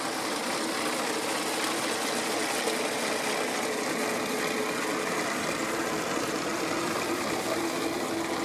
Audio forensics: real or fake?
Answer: real